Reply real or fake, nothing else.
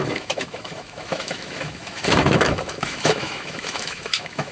fake